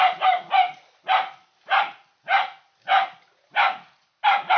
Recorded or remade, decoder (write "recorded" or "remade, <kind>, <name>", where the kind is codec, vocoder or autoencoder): recorded